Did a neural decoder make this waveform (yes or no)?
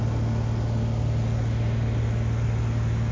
no